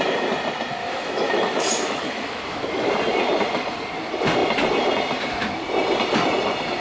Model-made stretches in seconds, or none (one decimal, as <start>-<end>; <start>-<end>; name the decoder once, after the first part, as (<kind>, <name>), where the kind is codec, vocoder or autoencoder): 0.8-2.9 (autoencoder, DAC-VAE)